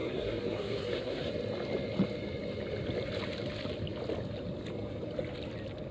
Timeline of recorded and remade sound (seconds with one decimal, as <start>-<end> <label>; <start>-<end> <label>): 0.0-1.3 remade; 1.3-5.9 recorded